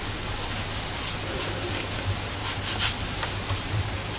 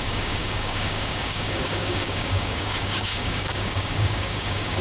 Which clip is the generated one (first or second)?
second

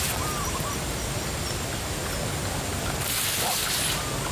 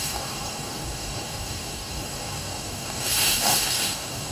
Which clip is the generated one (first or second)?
second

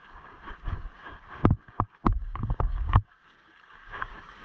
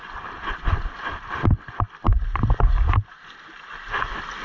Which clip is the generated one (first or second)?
first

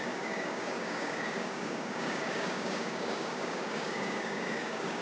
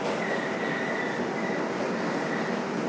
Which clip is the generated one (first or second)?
first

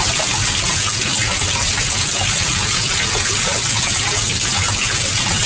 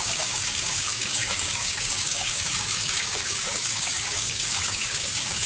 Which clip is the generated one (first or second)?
second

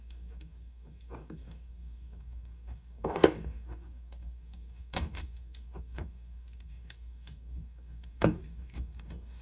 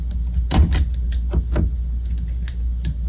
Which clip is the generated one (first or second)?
first